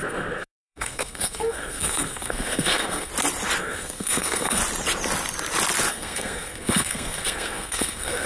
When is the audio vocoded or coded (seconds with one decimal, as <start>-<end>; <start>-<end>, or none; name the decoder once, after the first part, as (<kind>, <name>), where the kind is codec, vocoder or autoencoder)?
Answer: 0.0-3.1 (codec, SNAC); 3.6-4.6; 5.9-8.3